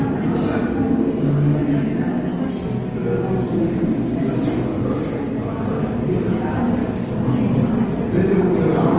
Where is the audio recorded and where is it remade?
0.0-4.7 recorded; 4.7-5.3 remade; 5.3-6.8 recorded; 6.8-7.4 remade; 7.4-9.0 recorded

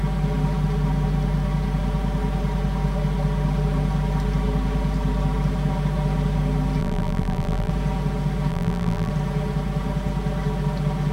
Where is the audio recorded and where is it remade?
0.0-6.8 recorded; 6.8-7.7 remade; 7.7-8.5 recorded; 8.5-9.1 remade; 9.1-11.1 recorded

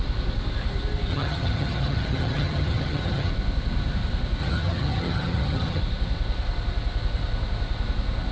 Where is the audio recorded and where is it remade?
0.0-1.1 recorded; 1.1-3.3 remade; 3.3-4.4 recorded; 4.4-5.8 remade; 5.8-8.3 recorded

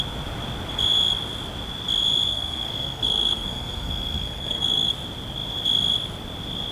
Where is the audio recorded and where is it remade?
0.0-2.3 recorded; 2.3-4.9 remade; 4.9-6.7 recorded

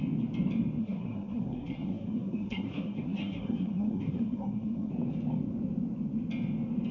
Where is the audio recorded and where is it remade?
0.0-0.8 recorded; 0.8-4.9 remade; 4.9-6.9 recorded